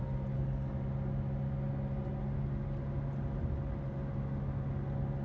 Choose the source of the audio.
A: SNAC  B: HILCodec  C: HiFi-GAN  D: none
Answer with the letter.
D